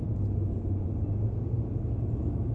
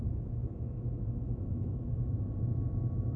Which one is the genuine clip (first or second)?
first